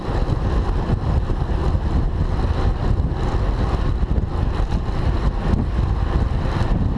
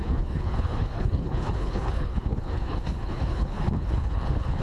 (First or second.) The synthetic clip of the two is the second